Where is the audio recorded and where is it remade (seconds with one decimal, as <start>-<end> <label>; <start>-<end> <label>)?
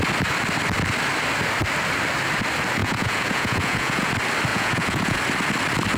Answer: 0.0-2.8 recorded; 2.8-4.1 remade; 4.1-4.5 recorded; 4.5-5.2 remade; 5.2-6.0 recorded